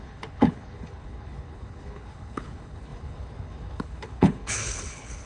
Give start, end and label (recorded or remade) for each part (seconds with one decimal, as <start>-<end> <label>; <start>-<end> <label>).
0.0-5.3 remade